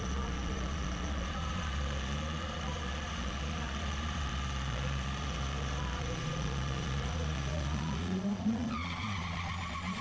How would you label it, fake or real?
fake